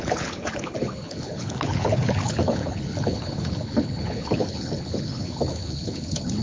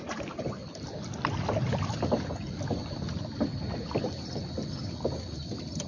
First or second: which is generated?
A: first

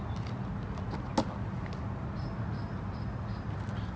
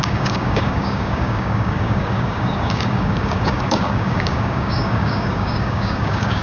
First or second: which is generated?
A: second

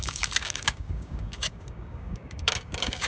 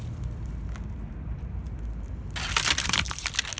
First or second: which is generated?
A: first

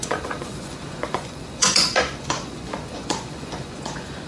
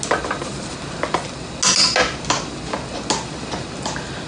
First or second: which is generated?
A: first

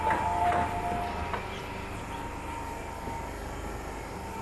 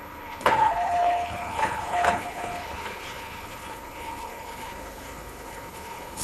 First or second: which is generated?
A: second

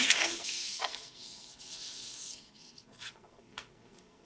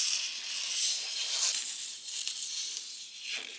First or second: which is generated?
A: first